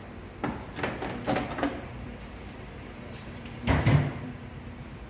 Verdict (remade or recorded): remade